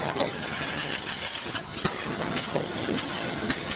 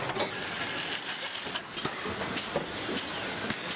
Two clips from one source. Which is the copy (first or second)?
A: first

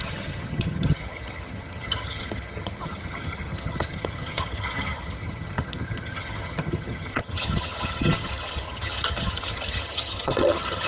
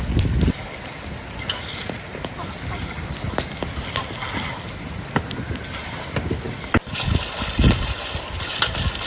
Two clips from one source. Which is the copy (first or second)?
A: first